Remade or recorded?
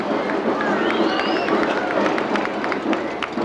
recorded